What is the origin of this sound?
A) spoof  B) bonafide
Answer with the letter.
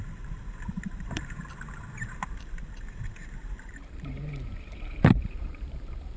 A